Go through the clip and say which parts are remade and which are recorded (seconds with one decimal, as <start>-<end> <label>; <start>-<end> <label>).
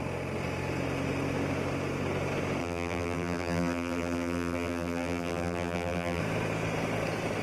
0.0-2.6 recorded; 2.6-6.2 remade; 6.2-7.4 recorded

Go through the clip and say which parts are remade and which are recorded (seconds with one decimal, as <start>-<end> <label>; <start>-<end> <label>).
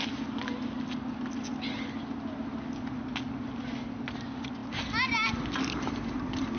0.0-6.6 recorded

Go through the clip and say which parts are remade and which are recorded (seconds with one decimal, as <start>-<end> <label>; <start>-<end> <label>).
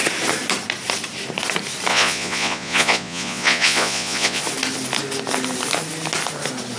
0.0-1.9 recorded; 1.9-4.4 remade; 4.4-6.8 recorded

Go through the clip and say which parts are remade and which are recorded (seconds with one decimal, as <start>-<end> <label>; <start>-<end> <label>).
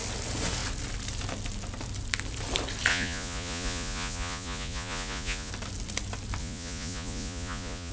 0.0-2.9 recorded; 2.9-5.5 remade; 5.5-6.4 recorded; 6.4-7.9 remade